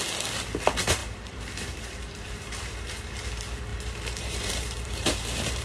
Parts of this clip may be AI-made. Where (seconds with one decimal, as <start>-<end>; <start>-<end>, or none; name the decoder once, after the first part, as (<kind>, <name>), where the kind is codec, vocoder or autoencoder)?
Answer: 1.0-3.1 (vocoder, BigVGAN v2); 3.7-5.6